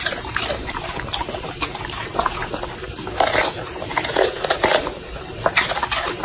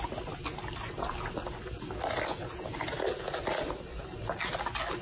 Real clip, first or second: second